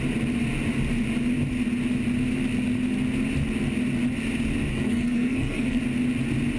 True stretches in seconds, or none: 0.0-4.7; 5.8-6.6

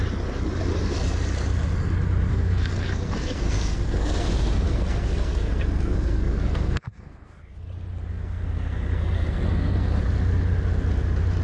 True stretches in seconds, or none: 0.0-2.3; 7.4-8.1; 10.0-11.4

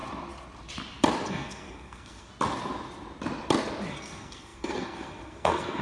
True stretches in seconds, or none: 0.0-1.3; 2.3-3.9

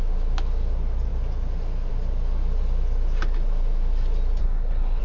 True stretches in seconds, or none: 0.0-4.4

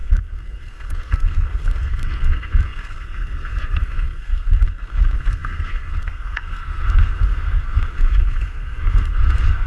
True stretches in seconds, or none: none

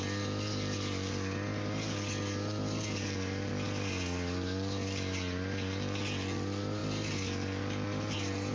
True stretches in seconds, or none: 0.0-8.5

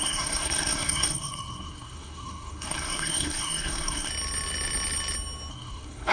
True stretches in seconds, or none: 4.1-5.5